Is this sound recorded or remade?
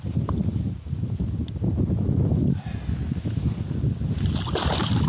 recorded